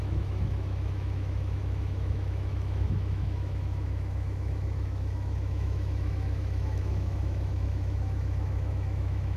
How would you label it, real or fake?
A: fake